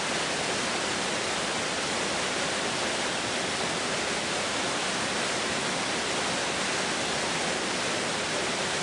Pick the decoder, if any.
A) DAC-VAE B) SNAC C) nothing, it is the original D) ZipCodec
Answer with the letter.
C